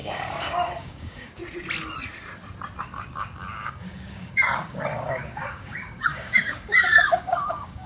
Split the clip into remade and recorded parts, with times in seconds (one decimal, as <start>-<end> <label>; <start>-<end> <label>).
0.0-1.4 remade; 1.4-2.8 recorded; 2.8-7.9 remade